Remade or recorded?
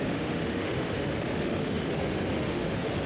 remade